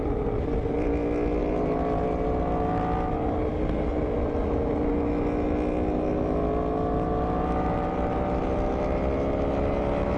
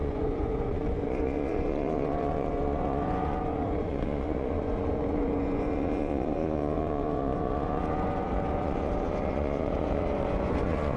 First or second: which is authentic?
first